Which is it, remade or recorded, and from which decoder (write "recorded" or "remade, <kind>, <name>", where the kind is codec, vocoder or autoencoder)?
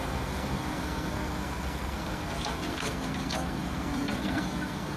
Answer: remade, codec, SNAC